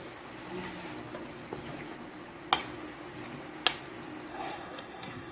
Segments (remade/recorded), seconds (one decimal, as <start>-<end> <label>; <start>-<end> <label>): 0.0-4.3 recorded; 4.3-5.3 remade